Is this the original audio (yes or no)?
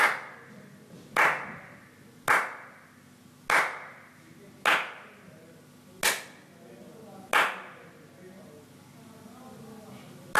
yes